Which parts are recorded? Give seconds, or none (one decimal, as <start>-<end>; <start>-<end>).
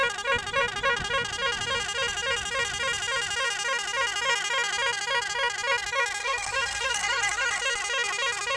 0.0-6.2; 7.6-8.6